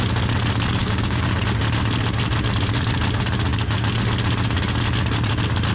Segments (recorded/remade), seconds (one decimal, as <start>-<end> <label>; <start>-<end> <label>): 0.0-0.8 recorded; 0.8-1.4 remade; 1.4-5.7 recorded

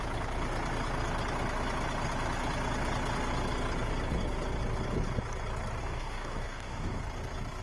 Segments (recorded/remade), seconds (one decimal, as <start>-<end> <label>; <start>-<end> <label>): 0.0-5.8 recorded; 5.8-7.0 remade; 7.0-7.6 recorded